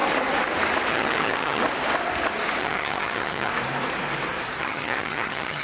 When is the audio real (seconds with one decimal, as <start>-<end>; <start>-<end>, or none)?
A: 0.0-0.9; 1.6-2.6; 3.5-4.6